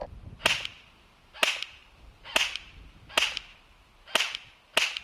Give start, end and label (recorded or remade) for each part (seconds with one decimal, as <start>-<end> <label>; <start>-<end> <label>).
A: 0.0-5.0 recorded